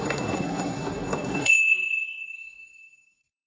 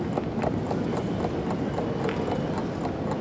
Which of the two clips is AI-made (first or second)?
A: first